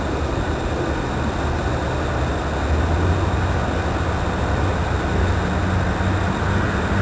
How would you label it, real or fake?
real